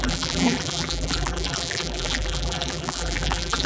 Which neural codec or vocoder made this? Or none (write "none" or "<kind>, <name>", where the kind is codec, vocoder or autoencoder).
vocoder, BigVGAN v2